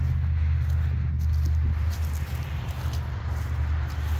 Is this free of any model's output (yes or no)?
yes